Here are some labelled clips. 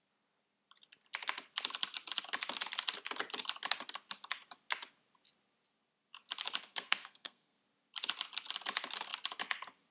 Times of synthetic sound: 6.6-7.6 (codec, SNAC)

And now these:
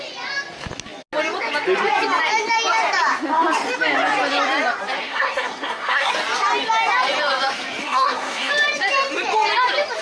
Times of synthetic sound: 5.0-6.1 (codec, SNAC); 7.8-8.5

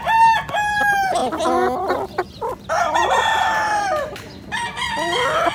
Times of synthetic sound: none